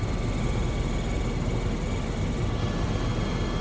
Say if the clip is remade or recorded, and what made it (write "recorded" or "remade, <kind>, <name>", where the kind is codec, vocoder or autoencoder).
recorded